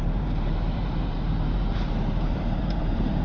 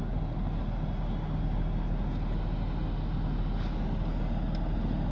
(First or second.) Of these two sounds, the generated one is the first